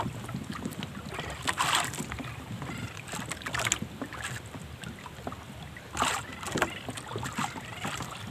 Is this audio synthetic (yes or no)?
no